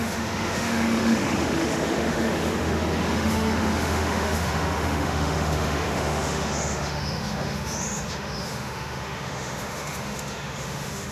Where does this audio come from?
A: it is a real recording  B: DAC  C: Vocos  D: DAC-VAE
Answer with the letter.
D